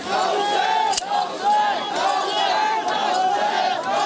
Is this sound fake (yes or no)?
no